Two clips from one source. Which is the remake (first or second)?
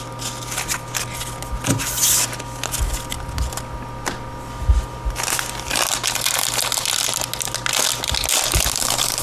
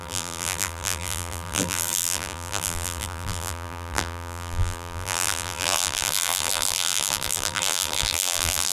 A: second